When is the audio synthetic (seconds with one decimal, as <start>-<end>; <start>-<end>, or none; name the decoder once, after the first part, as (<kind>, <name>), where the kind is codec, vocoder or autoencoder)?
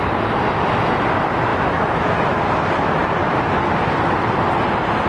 1.5-2.4 (autoencoder, DAC-VAE)